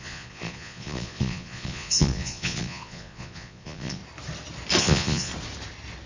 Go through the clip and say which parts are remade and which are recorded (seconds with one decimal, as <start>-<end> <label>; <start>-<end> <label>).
0.0-4.0 remade; 4.0-4.8 recorded; 4.8-5.3 remade; 5.3-6.1 recorded